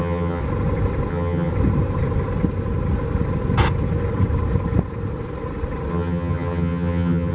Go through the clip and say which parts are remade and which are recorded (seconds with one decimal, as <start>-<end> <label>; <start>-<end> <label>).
0.0-0.4 remade; 0.4-1.1 recorded; 1.1-1.5 remade; 1.5-5.9 recorded; 5.9-7.3 remade

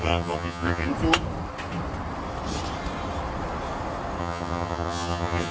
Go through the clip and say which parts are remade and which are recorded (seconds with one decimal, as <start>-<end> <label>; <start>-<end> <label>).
0.0-0.9 remade; 0.9-4.2 recorded; 4.2-5.5 remade